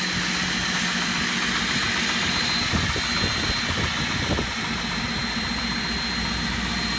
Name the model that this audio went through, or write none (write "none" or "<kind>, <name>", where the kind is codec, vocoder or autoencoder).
none